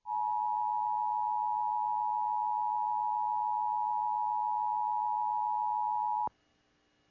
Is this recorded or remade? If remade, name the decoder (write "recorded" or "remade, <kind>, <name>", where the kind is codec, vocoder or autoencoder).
recorded